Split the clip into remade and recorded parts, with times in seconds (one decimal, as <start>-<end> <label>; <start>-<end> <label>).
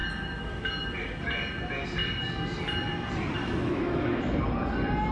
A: 0.0-0.7 remade; 0.7-3.4 recorded; 3.4-4.2 remade; 4.2-5.1 recorded